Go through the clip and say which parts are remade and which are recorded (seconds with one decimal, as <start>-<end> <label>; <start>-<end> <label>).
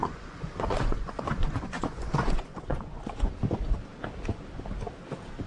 0.0-3.3 remade; 3.3-5.5 recorded